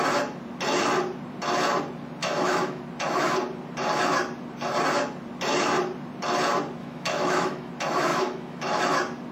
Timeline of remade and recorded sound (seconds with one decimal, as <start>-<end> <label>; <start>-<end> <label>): 0.0-2.2 recorded; 2.2-2.8 remade; 2.8-6.8 recorded; 6.8-7.7 remade; 7.7-8.1 recorded; 8.1-8.8 remade; 8.8-9.3 recorded